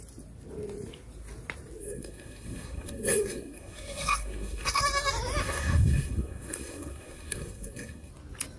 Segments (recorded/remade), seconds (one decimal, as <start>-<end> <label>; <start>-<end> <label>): 0.0-1.8 recorded; 1.8-4.8 remade; 4.8-5.4 recorded; 5.4-8.1 remade; 8.1-8.6 recorded